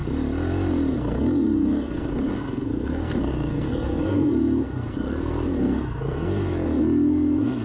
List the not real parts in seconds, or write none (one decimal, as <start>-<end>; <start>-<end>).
0.9-7.6

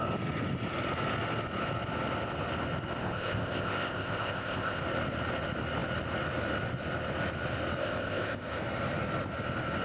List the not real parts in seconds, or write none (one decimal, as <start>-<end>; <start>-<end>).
3.0-4.8; 7.8-8.6